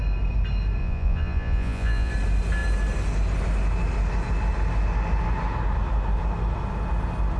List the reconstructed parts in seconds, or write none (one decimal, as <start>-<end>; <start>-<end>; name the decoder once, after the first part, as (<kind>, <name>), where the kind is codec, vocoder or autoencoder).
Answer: 0.8-2.1 (vocoder, Vocos)